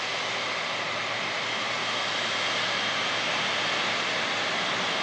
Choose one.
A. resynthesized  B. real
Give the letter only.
B